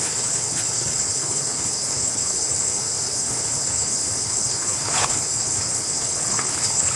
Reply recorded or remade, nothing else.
remade